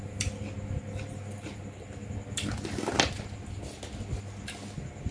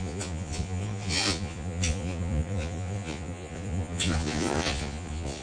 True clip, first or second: first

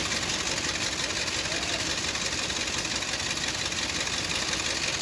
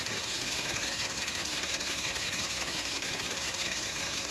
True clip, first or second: first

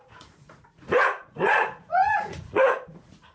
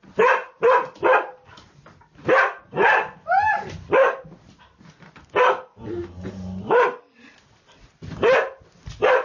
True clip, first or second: second